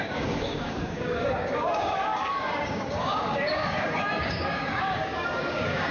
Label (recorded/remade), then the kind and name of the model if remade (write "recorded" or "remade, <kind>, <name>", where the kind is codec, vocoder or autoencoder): remade, codec, DAC